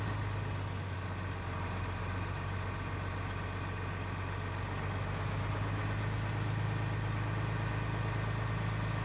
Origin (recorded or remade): recorded